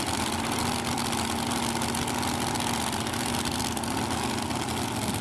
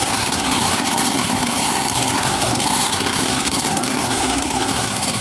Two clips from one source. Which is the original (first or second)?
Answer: first